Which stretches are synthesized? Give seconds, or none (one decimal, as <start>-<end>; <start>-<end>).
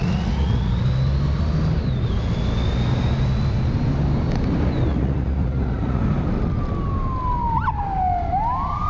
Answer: 0.0-0.7; 4.9-6.0